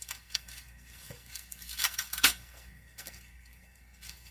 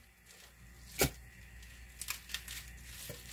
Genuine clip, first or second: second